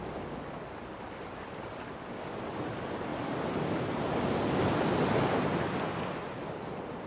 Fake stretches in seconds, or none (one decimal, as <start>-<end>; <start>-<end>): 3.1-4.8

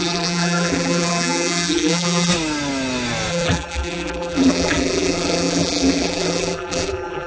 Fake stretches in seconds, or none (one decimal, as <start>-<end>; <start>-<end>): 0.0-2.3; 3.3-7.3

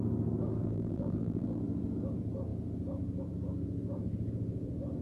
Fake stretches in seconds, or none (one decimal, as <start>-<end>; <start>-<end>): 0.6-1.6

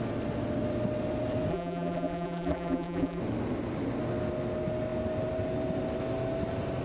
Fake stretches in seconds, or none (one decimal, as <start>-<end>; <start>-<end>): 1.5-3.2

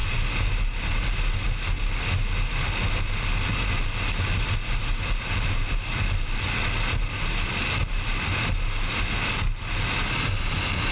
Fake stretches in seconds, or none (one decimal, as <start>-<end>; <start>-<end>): none

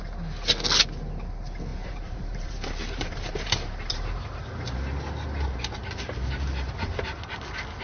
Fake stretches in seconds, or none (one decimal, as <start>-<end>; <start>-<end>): 1.7-4.4